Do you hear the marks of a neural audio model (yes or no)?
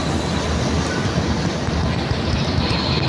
no